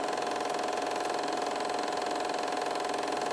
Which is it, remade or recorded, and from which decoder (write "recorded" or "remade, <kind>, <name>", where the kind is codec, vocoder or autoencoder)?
recorded